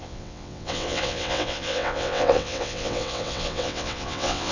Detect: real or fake fake